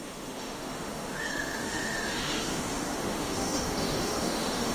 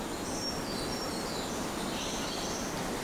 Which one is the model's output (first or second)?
first